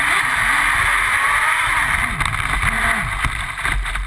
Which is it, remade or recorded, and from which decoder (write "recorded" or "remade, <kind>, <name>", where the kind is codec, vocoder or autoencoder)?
recorded